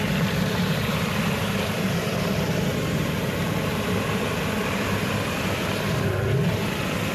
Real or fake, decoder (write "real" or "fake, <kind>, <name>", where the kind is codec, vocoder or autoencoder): real